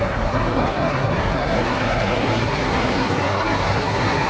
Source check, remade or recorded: remade